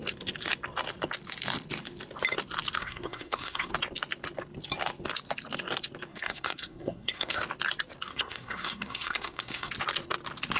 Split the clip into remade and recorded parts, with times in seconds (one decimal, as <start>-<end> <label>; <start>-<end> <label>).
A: 0.0-2.8 recorded; 2.8-3.7 remade; 3.7-6.1 recorded; 6.1-7.4 remade; 7.4-8.1 recorded; 8.1-9.7 remade; 9.7-10.6 recorded